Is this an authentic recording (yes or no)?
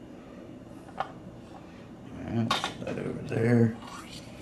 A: no